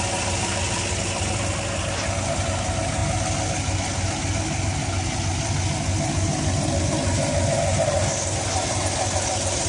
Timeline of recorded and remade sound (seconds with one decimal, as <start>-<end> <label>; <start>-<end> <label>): 0.0-9.7 recorded